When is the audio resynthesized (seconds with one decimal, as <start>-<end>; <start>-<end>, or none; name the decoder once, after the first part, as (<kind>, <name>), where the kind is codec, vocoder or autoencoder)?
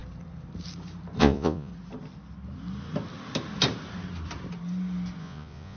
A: 1.2-1.7 (vocoder, Vocos); 5.2-5.8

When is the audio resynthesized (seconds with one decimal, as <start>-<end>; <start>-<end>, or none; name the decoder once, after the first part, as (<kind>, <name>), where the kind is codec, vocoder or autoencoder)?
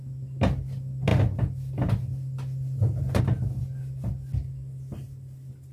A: none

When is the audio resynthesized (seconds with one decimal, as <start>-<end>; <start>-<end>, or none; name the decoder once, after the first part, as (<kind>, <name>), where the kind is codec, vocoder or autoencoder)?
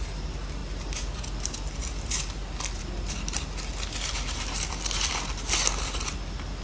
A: none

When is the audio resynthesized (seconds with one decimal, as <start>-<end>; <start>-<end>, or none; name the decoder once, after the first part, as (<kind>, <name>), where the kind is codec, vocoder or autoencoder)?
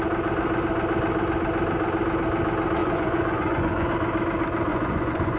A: 2.8-3.9 (vocoder, Vocos); 4.7-5.4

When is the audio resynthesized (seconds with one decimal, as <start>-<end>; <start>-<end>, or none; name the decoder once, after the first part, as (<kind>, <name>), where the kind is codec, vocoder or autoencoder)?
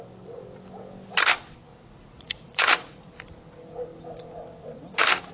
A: 1.7-3.1 (vocoder, Vocos)